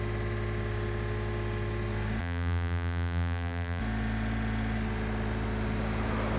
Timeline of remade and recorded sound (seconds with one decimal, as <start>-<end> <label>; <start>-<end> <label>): 0.0-2.2 recorded; 2.2-3.8 remade; 3.8-6.4 recorded